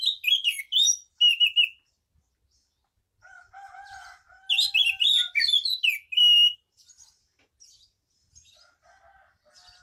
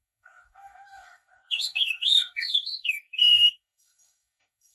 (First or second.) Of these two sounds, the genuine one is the first